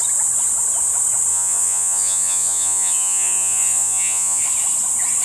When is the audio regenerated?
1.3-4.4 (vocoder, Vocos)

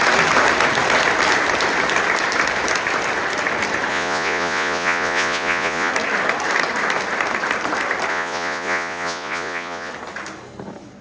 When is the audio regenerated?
3.9-5.9 (vocoder, Vocos); 8.1-9.9

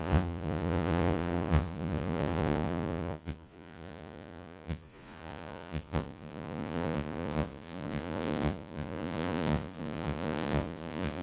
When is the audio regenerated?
0.0-11.2 (vocoder, Vocos)

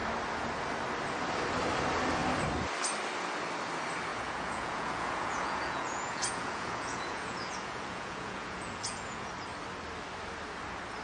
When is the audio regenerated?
4.1-9.3 (vocoder, Vocos)

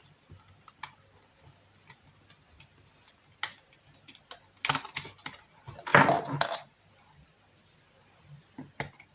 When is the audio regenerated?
none

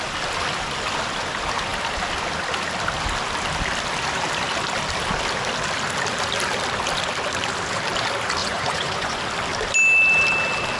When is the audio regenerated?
8.4-9.2 (vocoder, Vocos)

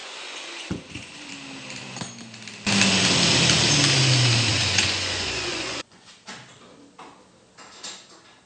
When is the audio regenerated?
0.0-1.3 (vocoder, Vocos); 4.5-6.1

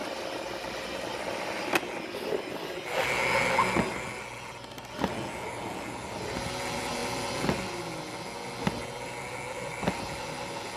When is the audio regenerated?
none